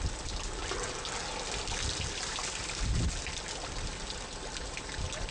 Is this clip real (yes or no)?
yes